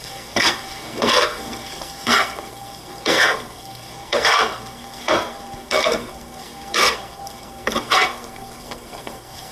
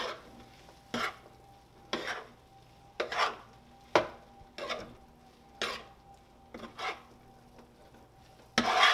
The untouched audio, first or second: second